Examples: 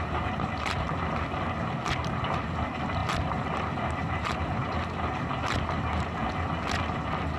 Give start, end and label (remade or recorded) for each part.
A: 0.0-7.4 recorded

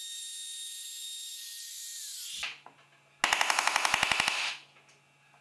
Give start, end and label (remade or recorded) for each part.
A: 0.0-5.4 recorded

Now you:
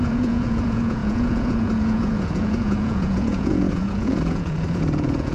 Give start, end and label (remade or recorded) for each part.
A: 0.0-5.3 remade

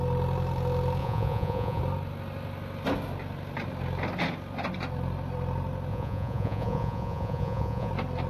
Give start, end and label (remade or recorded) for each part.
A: 0.0-1.0 recorded; 1.0-1.8 remade; 1.8-5.9 recorded; 5.9-7.9 remade; 7.9-8.3 recorded